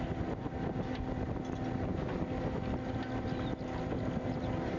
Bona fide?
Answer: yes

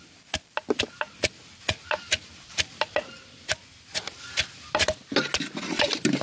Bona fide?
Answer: yes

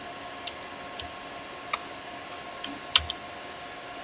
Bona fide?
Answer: yes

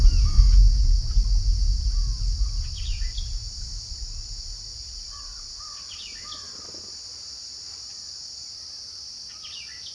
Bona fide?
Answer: yes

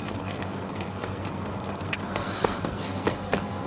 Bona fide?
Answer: no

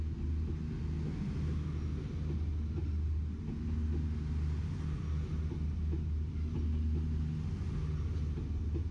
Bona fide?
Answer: yes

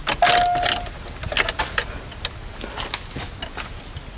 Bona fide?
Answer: yes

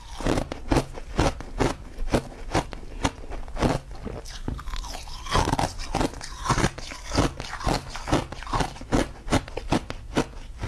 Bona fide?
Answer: yes